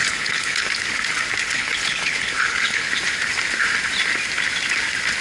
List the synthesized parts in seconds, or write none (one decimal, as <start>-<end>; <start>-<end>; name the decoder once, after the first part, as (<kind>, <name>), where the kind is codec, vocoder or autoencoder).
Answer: 0.0-0.7 (codec, HILCodec); 1.4-2.9